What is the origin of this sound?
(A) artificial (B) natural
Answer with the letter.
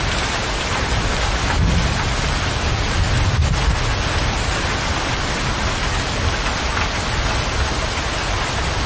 B